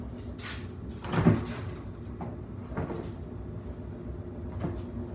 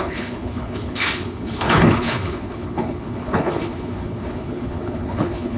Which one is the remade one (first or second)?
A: second